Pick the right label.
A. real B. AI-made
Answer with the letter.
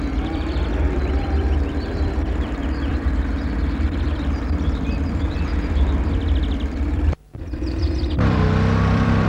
B